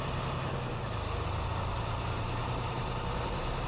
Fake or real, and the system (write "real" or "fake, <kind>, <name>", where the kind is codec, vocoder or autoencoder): fake, vocoder, BigVGAN v2